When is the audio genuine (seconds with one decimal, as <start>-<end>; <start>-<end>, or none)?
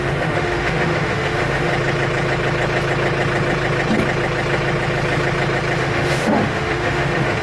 1.7-5.8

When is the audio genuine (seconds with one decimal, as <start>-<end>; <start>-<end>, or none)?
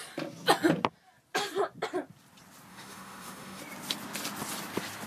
0.0-2.7; 3.6-5.1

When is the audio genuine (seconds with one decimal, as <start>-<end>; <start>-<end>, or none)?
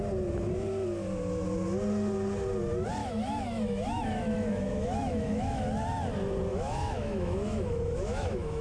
0.0-3.0; 5.6-6.5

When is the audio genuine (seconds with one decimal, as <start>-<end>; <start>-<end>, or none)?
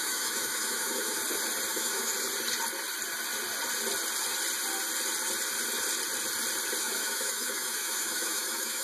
1.2-1.7; 2.1-6.8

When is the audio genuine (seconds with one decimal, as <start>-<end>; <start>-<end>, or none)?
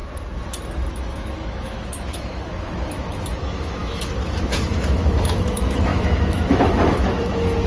0.0-0.9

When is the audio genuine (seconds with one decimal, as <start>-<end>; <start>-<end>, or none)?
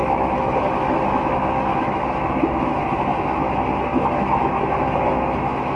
3.5-3.9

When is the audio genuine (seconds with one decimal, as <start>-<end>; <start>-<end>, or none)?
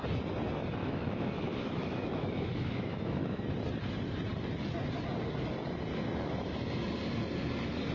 0.0-0.8; 3.4-7.9